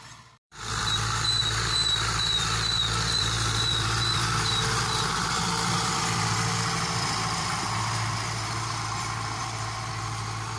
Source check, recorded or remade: remade